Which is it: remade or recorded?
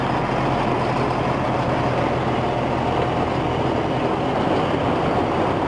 recorded